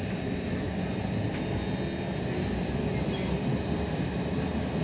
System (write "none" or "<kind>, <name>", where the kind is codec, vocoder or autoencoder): none